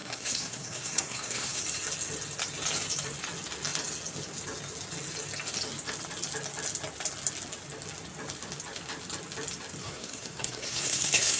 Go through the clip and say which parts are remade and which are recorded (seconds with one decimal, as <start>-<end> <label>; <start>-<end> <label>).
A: 0.0-1.6 remade; 1.6-9.8 recorded; 9.8-11.4 remade